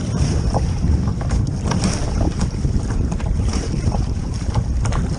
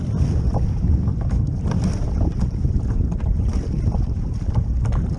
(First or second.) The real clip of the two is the second